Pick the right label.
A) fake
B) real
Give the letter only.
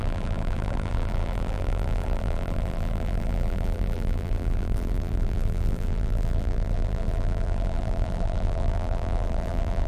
A